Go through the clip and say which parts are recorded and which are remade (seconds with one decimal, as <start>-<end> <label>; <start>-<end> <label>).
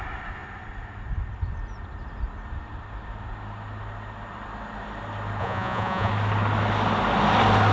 0.0-5.4 recorded; 5.4-6.1 remade; 6.1-7.7 recorded